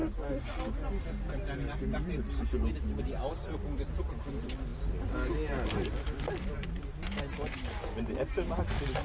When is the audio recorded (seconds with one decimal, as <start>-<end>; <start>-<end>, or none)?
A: 0.0-9.0